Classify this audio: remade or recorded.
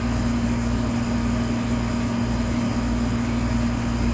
recorded